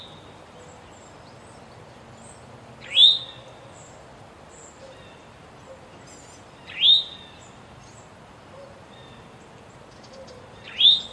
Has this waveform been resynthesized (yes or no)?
no